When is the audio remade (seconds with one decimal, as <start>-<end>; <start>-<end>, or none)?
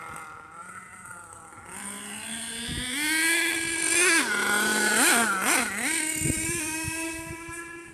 4.7-7.1